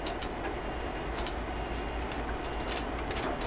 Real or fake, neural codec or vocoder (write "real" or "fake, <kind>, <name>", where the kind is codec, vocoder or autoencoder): real